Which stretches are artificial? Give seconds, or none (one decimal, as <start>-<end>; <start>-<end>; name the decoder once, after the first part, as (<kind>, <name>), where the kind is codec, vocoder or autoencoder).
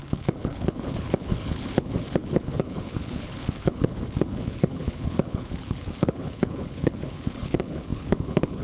0.0-8.6 (codec, HILCodec)